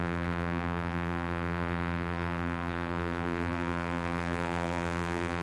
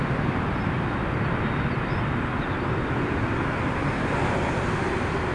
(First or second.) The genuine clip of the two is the second